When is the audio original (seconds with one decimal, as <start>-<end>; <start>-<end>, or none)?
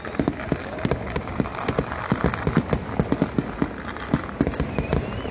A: 0.0-5.3